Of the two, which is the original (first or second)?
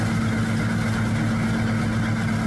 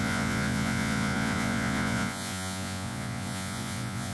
first